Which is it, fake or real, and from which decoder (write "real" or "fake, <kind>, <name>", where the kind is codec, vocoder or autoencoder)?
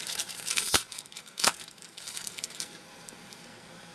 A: fake, codec, SNAC